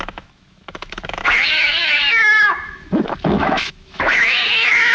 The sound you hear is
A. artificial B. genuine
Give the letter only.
A